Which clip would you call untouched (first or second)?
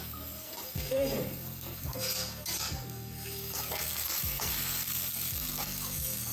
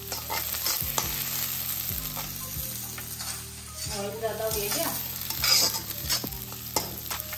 second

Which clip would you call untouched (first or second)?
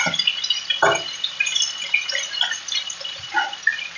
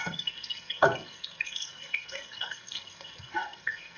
first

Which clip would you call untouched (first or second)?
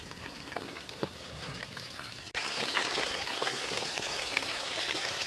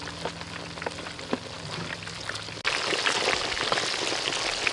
second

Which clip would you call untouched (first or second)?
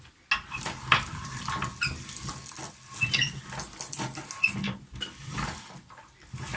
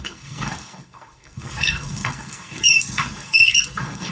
first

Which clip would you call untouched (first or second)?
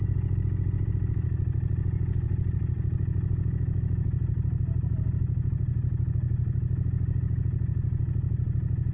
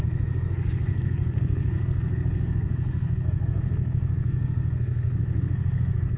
first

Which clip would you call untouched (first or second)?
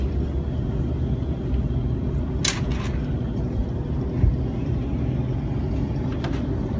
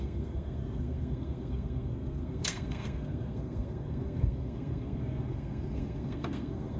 first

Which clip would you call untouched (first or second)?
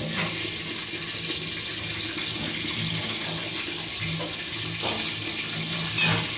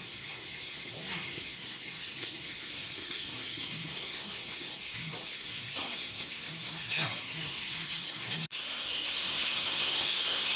first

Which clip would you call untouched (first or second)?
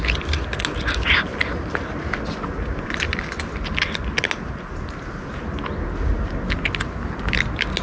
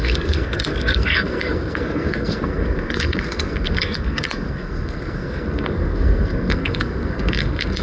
first